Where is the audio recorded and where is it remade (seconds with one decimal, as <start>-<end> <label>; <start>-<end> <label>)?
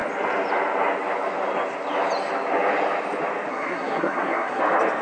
0.0-3.5 recorded; 3.5-4.6 remade; 4.6-5.0 recorded